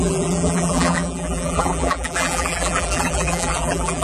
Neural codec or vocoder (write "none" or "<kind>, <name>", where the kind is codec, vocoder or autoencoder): vocoder, BigVGAN v2